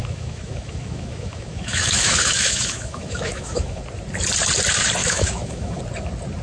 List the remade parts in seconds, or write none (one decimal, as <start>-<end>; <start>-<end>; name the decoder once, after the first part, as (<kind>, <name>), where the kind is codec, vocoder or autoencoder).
0.0-3.8 (autoencoder, DAC-VAE); 5.0-5.8